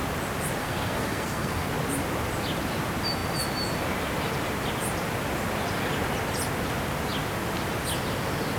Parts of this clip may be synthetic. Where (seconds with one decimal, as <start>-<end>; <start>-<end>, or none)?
0.6-1.7